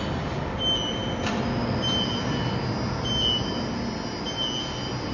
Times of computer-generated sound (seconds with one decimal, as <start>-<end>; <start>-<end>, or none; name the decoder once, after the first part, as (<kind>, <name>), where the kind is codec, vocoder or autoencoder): none